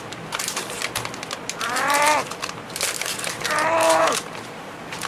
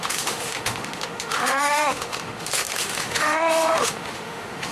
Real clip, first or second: first